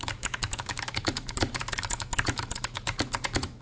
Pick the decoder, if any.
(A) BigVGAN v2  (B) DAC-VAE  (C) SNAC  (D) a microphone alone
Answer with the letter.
B